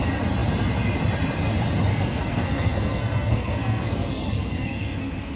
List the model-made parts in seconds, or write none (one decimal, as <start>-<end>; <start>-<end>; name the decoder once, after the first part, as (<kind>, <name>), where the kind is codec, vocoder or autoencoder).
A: 1.9-5.4 (codec, SNAC)